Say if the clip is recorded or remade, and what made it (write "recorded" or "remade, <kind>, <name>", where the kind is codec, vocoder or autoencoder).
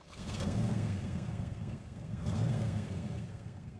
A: remade, codec, SNAC